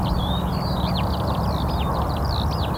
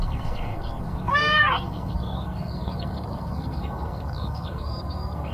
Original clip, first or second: first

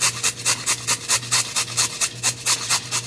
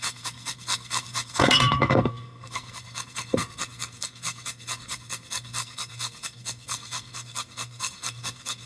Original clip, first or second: first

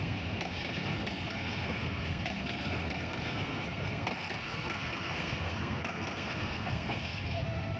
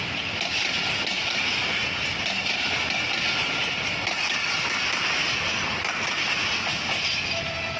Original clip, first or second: second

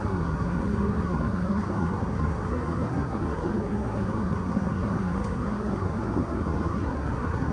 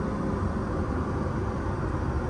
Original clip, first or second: second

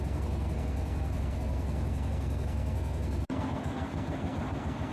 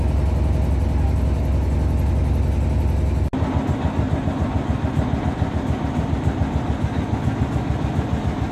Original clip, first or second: second